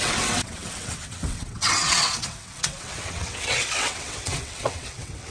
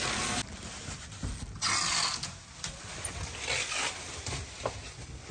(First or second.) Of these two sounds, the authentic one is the second